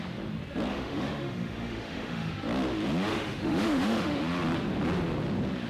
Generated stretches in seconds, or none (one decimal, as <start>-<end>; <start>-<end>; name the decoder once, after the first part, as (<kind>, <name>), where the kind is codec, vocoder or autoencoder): 0.7-2.3 (autoencoder, DAC-VAE); 3.1-4.2